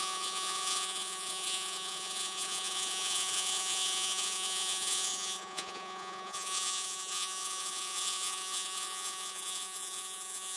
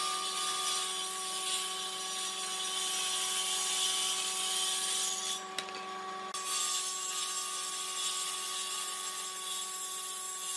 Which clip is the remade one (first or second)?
first